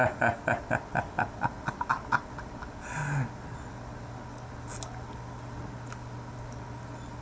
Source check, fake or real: real